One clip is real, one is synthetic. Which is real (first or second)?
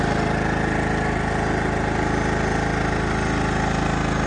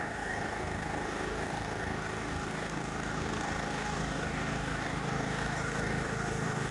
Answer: first